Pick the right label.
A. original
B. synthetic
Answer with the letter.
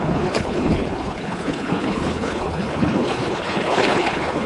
B